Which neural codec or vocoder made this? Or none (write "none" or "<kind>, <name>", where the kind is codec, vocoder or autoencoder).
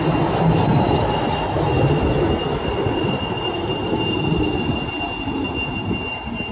none